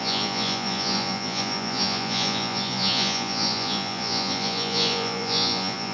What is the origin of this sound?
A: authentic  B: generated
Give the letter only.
B